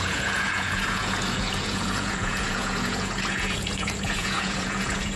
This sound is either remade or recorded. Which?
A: remade